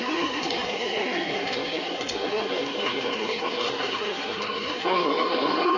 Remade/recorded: remade